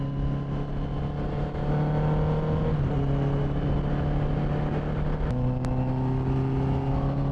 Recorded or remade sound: recorded